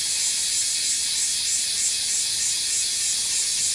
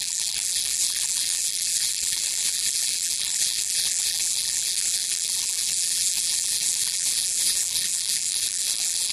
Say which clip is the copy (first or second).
second